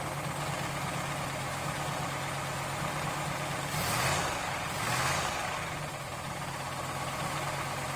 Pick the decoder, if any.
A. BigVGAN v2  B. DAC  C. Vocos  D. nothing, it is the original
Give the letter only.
D